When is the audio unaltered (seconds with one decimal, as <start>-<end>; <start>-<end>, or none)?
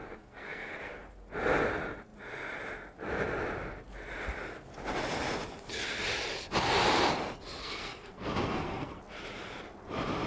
1.1-7.6; 9.0-10.3